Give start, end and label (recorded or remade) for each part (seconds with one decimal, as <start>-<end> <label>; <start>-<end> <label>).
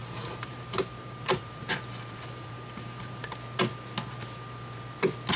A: 0.0-3.2 remade; 3.2-5.4 recorded